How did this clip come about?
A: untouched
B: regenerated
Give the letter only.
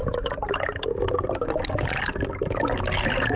A